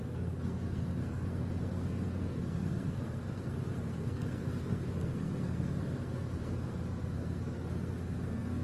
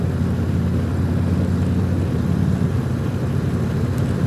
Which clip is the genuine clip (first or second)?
second